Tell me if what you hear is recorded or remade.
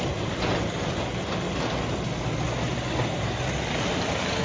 recorded